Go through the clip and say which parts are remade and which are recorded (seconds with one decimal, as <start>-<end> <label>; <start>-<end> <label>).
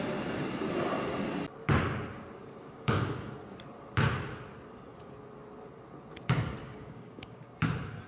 0.0-2.6 recorded; 2.6-3.3 remade; 3.3-6.6 recorded; 6.6-7.5 remade; 7.5-8.1 recorded